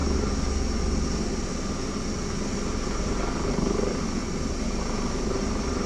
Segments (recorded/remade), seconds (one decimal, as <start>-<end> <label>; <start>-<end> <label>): 0.0-3.5 recorded; 3.5-4.2 remade; 4.2-4.8 recorded; 4.8-5.9 remade